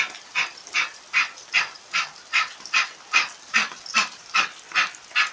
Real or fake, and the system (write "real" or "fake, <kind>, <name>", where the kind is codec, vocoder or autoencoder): real